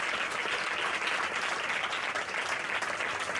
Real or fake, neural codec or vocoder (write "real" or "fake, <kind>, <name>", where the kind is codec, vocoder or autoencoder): real